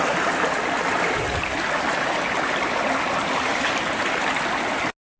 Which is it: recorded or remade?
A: recorded